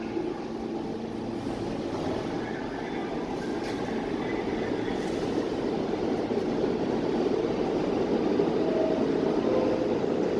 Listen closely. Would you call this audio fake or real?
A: real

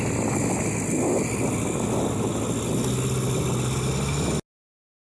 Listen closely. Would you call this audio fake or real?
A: real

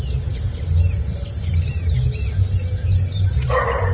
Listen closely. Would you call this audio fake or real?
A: real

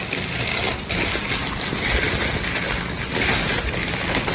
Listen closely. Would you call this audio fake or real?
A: real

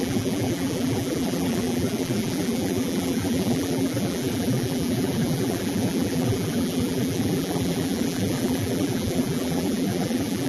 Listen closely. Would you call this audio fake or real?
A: fake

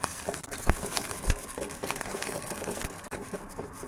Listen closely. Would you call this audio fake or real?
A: fake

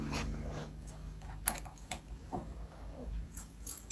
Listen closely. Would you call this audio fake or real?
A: fake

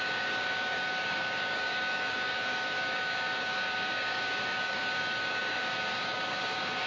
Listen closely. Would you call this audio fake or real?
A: fake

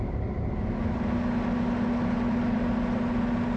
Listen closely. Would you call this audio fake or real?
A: real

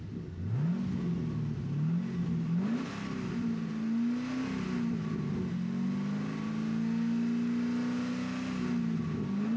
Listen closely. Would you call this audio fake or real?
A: real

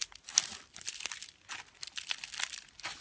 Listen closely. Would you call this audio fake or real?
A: real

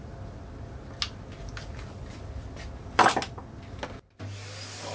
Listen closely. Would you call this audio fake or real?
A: real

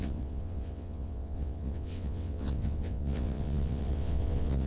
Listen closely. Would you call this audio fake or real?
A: fake